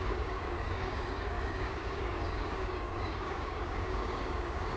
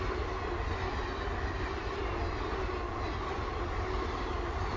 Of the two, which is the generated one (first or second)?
first